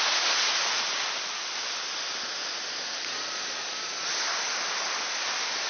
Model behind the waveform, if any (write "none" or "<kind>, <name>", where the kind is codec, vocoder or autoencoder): none